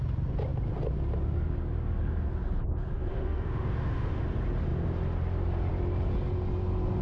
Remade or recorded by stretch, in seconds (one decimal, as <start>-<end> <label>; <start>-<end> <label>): 0.0-3.1 recorded; 3.1-4.2 remade; 4.2-7.0 recorded